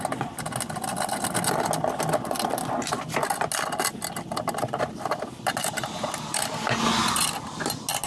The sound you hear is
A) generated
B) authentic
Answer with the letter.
B